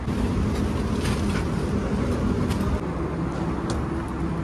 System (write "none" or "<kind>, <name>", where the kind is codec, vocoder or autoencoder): none